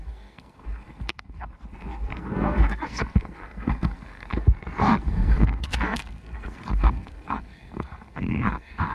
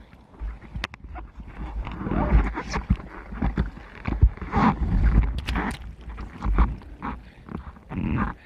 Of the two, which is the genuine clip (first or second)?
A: second